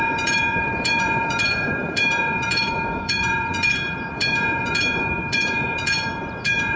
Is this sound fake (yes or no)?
yes